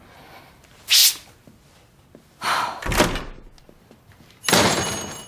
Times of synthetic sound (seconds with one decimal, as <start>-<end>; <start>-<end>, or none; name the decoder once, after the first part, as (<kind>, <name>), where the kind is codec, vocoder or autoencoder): none